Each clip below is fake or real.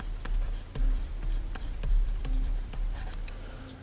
fake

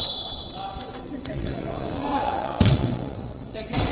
fake